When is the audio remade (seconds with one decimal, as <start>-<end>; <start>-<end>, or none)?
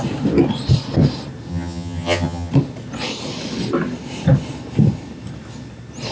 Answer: 1.5-2.5